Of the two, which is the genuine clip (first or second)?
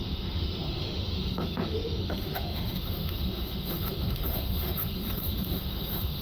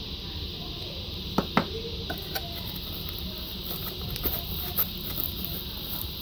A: second